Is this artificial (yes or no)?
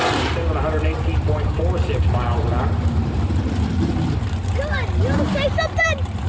no